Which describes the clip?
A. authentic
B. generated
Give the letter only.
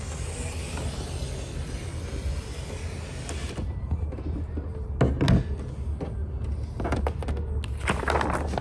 A